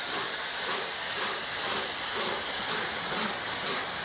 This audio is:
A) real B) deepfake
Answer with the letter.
A